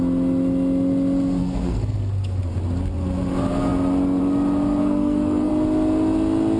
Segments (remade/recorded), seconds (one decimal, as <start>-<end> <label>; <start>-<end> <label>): 0.0-1.4 recorded; 1.4-2.4 remade; 2.4-4.8 recorded; 4.8-5.5 remade; 5.5-6.6 recorded